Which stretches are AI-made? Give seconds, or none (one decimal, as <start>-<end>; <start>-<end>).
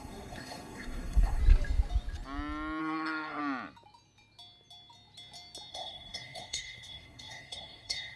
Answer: 0.0-1.4; 2.8-3.4; 5.7-8.2